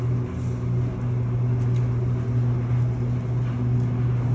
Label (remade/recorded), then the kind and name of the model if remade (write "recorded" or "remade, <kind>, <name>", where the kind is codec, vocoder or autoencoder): recorded